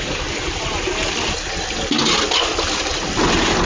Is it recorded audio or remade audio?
recorded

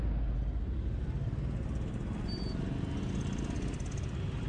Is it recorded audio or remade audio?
recorded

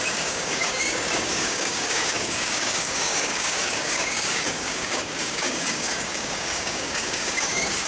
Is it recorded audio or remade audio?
remade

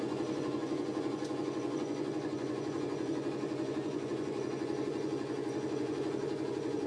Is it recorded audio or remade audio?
remade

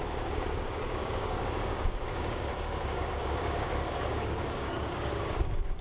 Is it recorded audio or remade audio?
remade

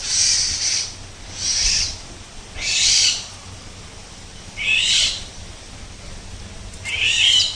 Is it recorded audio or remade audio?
recorded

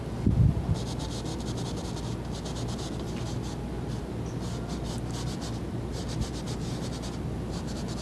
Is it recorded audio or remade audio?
recorded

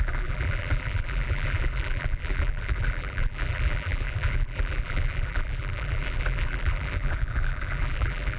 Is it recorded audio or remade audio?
remade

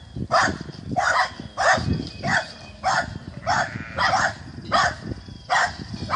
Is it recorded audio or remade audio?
recorded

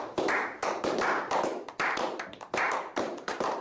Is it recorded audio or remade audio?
remade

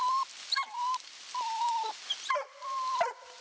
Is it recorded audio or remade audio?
remade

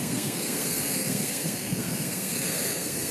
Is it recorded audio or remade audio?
remade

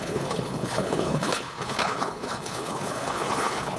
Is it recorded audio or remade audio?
remade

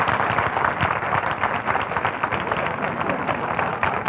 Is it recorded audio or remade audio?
recorded